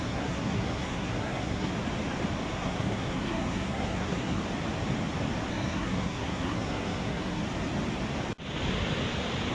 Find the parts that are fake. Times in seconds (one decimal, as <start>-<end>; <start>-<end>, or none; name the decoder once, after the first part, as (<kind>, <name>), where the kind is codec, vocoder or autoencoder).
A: 0.0-1.7 (codec, SNAC); 2.5-4.4; 5.5-7.4

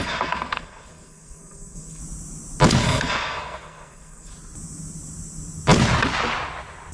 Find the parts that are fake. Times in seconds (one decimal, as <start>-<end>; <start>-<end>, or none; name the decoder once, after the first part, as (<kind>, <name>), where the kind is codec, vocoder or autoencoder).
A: 0.0-2.0 (codec, SNAC); 2.8-4.3

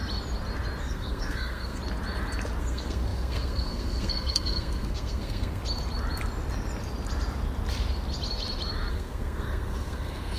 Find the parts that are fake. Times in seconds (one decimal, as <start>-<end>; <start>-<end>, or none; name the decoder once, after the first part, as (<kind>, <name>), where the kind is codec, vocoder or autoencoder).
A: 0.8-1.8 (codec, SNAC); 2.6-5.6; 8.9-10.4

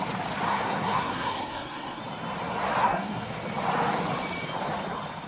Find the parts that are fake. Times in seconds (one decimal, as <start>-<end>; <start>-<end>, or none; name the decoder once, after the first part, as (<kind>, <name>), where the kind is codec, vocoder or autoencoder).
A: 0.5-2.0 (codec, SNAC); 2.8-3.4

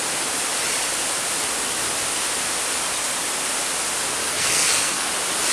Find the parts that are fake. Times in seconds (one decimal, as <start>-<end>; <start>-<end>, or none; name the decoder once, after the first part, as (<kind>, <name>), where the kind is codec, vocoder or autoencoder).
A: 4.2-5.1 (codec, SNAC)

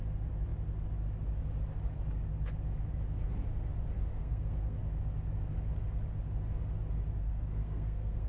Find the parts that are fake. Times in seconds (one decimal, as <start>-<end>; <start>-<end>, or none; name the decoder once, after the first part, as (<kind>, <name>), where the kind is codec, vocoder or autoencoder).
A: 4.1-4.8 (codec, SNAC); 7.2-8.3

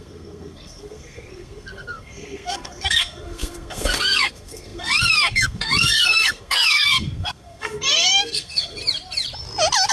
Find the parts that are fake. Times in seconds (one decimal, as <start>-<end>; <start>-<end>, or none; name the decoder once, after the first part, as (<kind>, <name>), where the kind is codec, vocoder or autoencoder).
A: 0.0-8.8 (codec, SNAC)